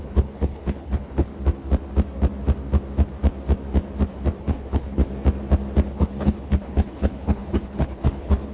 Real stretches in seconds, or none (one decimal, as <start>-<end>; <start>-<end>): 1.3-4.4; 5.1-5.9